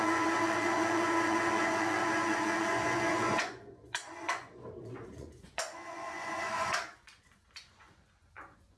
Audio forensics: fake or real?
fake